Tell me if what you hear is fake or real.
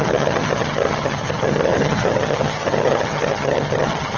fake